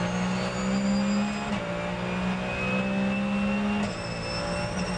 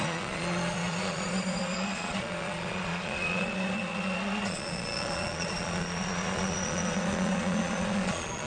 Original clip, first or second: first